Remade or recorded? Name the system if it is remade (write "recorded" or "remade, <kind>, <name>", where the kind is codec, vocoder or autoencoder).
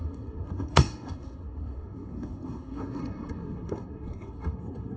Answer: remade, codec, SNAC